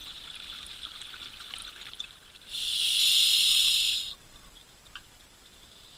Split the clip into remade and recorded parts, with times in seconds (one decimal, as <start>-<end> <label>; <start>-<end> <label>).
0.0-1.1 remade; 1.1-1.6 recorded; 1.6-3.7 remade; 3.7-6.0 recorded